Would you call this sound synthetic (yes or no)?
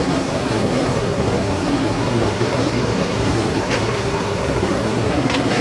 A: yes